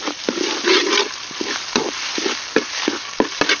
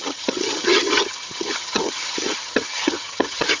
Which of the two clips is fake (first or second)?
second